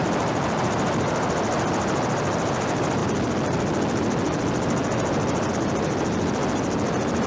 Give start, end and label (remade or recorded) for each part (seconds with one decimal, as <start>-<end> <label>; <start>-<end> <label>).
0.0-7.3 recorded